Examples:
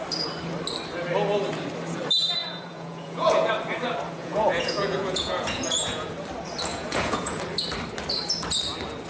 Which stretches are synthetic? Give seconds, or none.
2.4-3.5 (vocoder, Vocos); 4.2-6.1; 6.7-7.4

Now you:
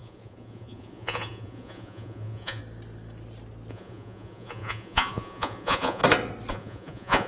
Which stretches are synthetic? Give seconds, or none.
0.0-2.6 (vocoder, Vocos); 3.7-6.0; 6.5-7.3